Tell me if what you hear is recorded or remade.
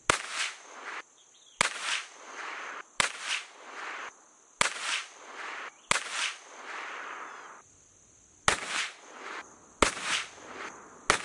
recorded